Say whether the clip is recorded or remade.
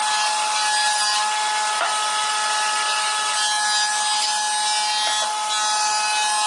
recorded